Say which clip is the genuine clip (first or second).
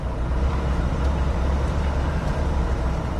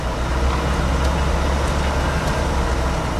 second